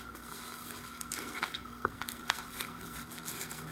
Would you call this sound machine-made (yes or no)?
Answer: yes